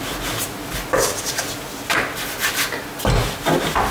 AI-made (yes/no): no